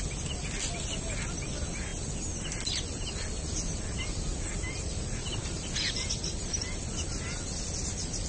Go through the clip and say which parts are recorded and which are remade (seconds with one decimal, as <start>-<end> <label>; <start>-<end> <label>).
0.0-8.3 recorded